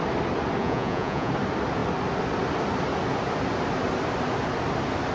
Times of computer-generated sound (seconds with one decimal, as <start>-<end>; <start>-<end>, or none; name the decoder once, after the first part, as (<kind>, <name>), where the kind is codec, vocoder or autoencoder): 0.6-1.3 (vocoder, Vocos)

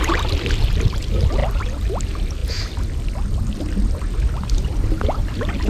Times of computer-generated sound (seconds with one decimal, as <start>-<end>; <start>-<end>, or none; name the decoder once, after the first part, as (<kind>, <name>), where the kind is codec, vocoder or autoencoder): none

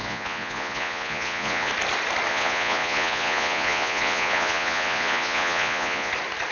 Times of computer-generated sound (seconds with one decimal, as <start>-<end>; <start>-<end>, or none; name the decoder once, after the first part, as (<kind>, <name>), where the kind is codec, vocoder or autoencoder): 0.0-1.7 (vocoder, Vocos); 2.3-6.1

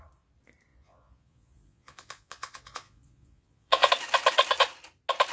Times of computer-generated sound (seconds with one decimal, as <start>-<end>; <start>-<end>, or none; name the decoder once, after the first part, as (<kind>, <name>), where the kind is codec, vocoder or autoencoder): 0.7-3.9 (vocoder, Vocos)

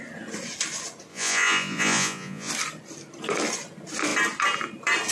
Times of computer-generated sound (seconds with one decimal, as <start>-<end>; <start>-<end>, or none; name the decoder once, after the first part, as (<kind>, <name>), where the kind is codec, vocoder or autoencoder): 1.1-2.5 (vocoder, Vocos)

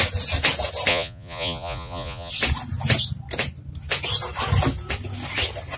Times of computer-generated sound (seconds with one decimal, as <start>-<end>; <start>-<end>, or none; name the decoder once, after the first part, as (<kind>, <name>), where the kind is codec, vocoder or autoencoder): 0.9-2.3 (vocoder, Vocos)

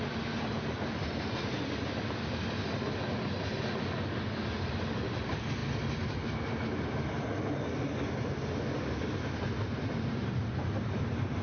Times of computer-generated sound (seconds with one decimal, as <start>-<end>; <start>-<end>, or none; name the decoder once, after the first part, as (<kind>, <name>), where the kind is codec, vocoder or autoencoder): none

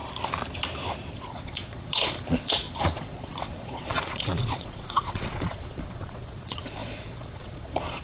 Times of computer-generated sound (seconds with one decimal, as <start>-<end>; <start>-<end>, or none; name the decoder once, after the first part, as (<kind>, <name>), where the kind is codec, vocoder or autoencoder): 1.1-8.0 (vocoder, Vocos)